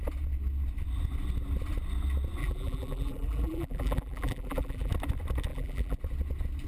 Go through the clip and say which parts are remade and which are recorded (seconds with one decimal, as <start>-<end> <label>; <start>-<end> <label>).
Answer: 0.0-2.4 recorded; 2.4-4.9 remade; 4.9-5.5 recorded; 5.5-6.0 remade; 6.0-6.7 recorded